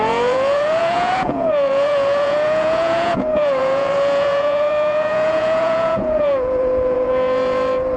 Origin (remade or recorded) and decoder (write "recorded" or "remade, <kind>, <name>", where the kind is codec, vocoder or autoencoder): remade, vocoder, Vocos